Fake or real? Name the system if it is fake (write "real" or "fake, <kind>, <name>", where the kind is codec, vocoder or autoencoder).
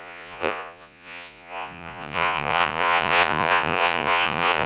fake, vocoder, Vocos